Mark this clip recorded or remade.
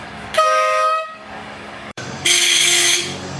remade